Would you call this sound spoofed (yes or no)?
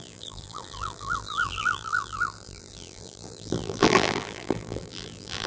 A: yes